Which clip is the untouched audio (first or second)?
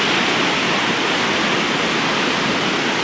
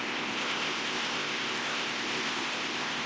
first